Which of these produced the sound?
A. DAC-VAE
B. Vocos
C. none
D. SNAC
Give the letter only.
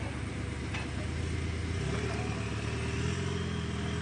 C